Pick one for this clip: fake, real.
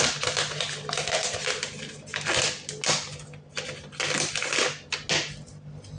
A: real